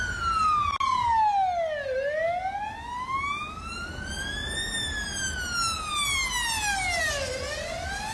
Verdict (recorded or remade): recorded